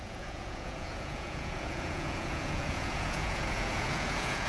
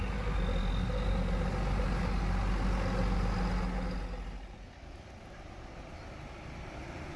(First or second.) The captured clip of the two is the second